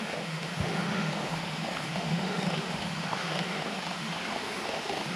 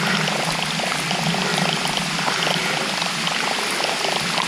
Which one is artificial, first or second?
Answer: first